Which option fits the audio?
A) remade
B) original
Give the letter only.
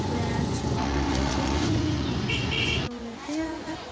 A